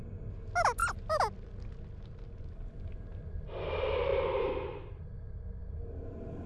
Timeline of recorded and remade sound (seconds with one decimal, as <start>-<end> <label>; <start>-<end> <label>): 0.0-6.5 recorded